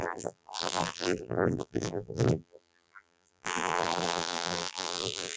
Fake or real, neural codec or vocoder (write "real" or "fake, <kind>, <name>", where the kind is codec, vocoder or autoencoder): fake, vocoder, BigVGAN v2